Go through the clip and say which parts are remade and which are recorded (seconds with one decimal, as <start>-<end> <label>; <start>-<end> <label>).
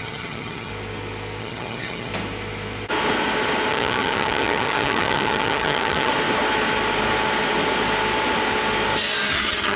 0.0-0.7 remade; 0.7-1.4 recorded; 1.4-2.1 remade; 2.1-3.7 recorded; 3.7-6.1 remade; 6.1-9.3 recorded; 9.3-9.8 remade